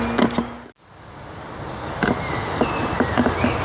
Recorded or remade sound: recorded